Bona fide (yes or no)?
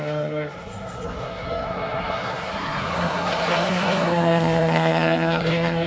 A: no